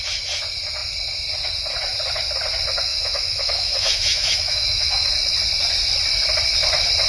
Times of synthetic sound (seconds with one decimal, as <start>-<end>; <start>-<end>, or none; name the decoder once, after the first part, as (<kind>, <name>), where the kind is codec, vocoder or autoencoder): 2.9-5.1 (autoencoder, DAC-VAE)